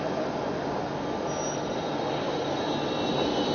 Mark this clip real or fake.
real